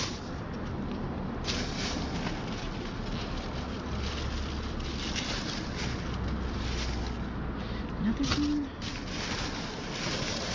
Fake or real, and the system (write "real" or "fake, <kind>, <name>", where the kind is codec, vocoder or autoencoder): real